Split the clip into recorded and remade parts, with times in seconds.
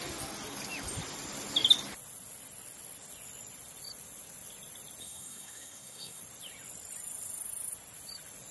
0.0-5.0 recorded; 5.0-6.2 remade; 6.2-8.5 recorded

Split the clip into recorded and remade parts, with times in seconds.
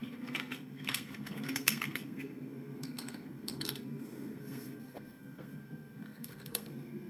0.0-7.1 remade